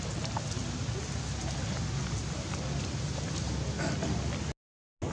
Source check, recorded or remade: recorded